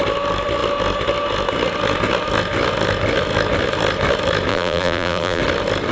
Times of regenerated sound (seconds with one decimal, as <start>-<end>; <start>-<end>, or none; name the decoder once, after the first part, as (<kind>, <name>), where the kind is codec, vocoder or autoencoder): 4.5-5.4 (vocoder, BigVGAN v2)